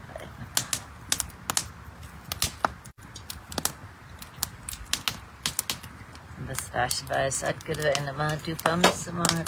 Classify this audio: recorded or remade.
recorded